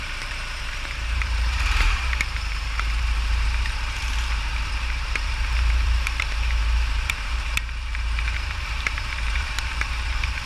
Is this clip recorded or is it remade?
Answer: remade